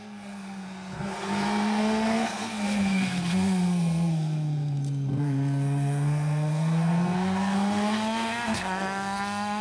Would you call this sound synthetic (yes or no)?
yes